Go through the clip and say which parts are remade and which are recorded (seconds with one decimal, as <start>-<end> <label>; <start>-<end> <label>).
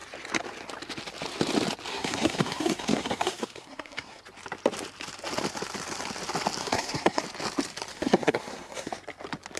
0.0-1.9 recorded; 1.9-4.2 remade; 4.2-6.6 recorded; 6.6-7.2 remade; 7.2-7.9 recorded; 7.9-8.9 remade; 8.9-9.6 recorded